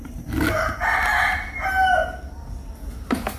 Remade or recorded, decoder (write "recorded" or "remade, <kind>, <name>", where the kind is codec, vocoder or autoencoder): recorded